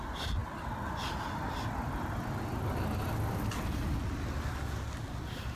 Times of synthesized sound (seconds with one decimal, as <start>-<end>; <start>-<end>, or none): none